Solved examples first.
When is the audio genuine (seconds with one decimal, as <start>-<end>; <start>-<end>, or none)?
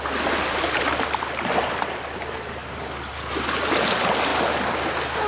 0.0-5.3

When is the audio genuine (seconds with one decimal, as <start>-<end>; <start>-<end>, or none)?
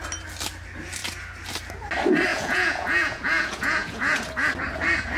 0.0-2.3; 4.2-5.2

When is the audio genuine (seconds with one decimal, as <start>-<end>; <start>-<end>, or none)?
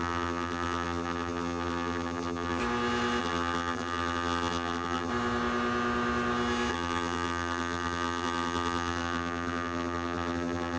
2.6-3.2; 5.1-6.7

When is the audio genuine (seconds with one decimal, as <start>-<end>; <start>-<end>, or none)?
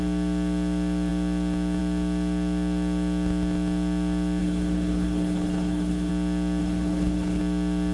0.0-4.4; 6.1-6.6; 7.4-7.9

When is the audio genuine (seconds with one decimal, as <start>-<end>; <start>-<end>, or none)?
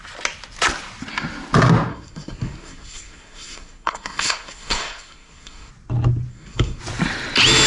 0.0-1.9; 5.7-6.3; 6.8-7.7